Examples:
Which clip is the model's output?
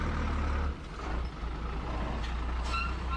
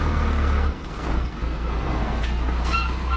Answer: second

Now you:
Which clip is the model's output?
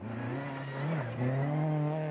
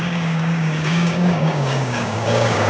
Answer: second